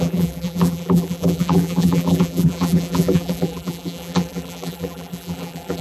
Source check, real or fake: fake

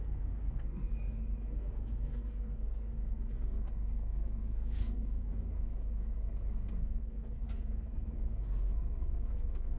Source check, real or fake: fake